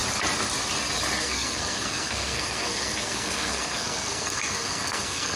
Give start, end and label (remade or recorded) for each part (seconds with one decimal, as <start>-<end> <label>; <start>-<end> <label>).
0.0-1.2 recorded; 1.2-5.4 remade